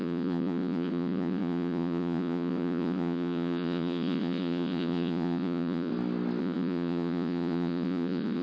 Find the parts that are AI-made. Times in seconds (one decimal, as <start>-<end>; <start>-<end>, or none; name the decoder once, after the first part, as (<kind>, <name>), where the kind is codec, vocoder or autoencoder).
0.0-5.9 (vocoder, Vocos); 6.4-8.4